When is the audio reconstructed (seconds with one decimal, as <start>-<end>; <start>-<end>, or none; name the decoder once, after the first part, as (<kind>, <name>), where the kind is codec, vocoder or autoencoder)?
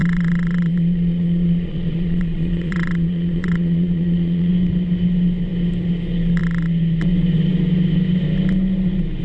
0.0-4.5 (vocoder, Vocos)